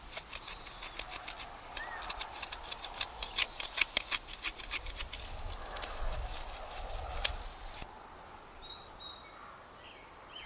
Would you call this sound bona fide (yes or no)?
yes